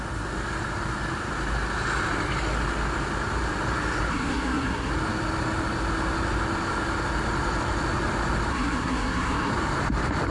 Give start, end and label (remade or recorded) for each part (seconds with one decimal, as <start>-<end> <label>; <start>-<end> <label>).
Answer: 0.0-4.1 recorded; 4.1-4.9 remade; 4.9-8.5 recorded; 8.5-9.5 remade; 9.5-10.3 recorded